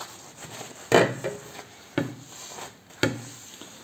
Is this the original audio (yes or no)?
yes